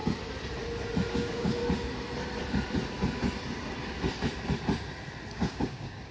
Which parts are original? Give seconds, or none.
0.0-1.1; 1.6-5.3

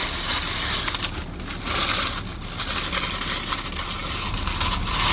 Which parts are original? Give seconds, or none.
0.0-5.1

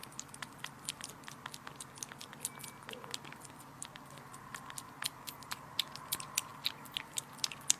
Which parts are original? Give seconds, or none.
0.0-7.8